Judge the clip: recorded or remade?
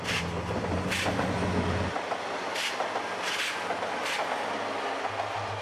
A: recorded